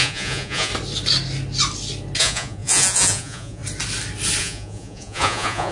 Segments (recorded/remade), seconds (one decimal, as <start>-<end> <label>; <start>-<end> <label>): 0.0-0.7 remade; 0.7-2.2 recorded; 2.2-3.6 remade; 3.6-4.4 recorded; 4.4-5.7 remade